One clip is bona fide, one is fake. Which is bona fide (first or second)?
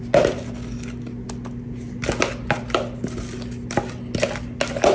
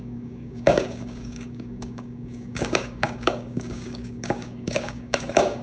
first